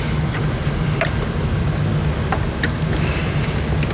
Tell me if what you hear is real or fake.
real